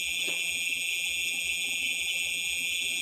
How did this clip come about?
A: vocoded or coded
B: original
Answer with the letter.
A